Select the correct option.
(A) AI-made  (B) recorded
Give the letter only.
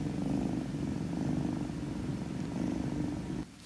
B